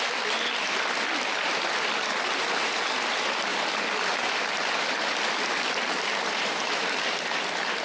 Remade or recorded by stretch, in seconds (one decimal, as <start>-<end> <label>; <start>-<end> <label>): 0.0-7.8 recorded